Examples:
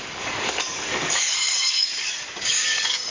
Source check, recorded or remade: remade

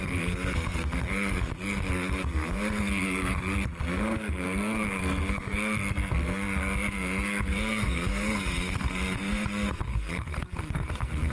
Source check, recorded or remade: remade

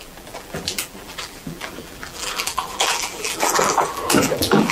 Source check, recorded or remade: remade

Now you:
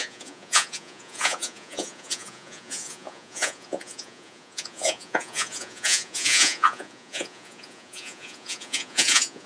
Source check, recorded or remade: remade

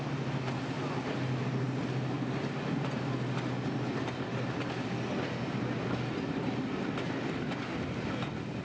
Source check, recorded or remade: recorded